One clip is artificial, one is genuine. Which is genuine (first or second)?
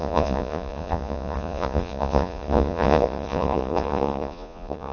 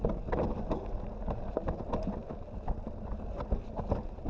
second